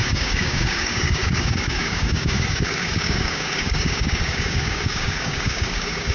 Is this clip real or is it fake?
fake